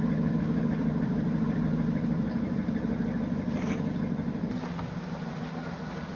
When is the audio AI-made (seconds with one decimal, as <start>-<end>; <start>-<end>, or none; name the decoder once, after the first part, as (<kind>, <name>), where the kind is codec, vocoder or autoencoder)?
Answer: 0.0-2.6 (vocoder, BigVGAN v2); 4.4-6.2

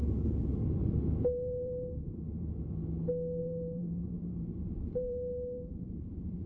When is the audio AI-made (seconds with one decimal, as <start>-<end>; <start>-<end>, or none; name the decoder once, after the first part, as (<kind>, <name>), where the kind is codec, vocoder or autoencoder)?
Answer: 0.0-2.5 (vocoder, BigVGAN v2); 3.4-6.5

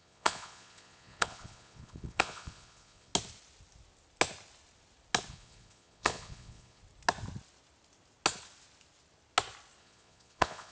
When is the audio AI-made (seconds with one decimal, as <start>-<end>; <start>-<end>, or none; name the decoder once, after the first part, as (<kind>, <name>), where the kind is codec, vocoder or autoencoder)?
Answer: 0.0-3.1 (vocoder, Vocos); 5.3-6.8; 9.8-10.7

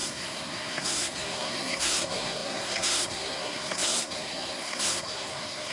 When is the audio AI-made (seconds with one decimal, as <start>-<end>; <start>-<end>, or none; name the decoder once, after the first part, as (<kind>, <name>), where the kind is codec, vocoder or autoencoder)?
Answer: 0.0-5.7 (codec, SNAC)

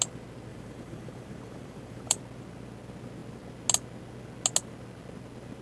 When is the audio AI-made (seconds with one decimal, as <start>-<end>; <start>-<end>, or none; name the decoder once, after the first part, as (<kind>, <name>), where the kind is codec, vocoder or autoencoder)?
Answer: 0.5-2.2 (vocoder, BigVGAN v2)

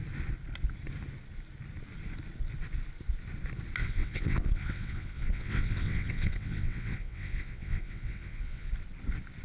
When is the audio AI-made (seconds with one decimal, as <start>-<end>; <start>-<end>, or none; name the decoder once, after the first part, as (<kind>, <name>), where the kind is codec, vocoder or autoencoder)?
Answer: 3.8-8.7 (vocoder, WaveNeXt)